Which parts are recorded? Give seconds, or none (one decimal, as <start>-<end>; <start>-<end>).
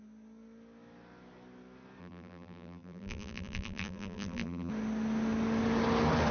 0.0-2.0; 4.7-6.3